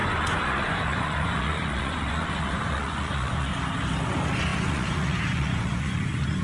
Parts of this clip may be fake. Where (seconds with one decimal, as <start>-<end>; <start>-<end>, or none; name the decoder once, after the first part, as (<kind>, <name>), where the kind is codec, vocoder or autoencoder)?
0.0-3.5 (vocoder, Vocos); 4.0-6.4